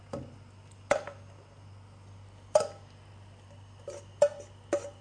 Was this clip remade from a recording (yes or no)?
no